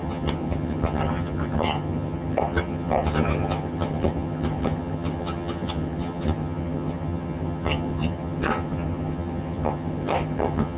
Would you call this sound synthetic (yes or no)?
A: yes